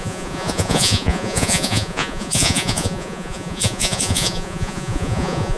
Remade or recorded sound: remade